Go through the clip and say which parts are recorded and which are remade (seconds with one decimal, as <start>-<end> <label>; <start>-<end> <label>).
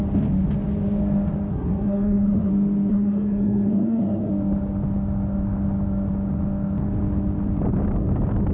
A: 0.0-1.5 recorded; 1.5-2.5 remade; 2.5-2.9 recorded; 2.9-4.3 remade; 4.3-8.5 recorded